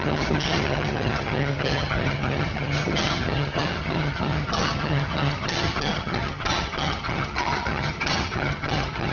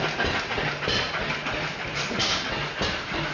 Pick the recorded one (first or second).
second